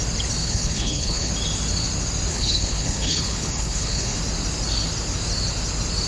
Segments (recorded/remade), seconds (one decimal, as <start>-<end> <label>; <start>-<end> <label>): 0.0-0.4 recorded; 0.4-1.3 remade; 1.3-2.3 recorded; 2.3-4.2 remade; 4.2-6.1 recorded